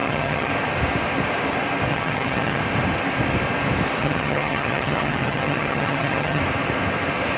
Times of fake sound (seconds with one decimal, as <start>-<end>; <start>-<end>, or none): 0.0-0.5; 1.9-2.6; 4.0-6.4